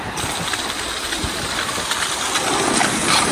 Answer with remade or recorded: recorded